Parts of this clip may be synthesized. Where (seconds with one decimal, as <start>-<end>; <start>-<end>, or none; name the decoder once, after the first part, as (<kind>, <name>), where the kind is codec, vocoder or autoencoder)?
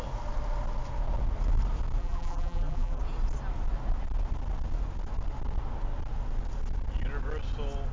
2.0-3.0 (vocoder, BigVGAN v2)